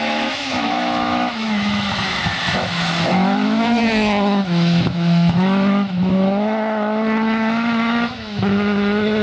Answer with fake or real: fake